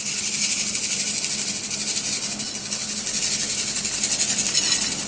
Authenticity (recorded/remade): recorded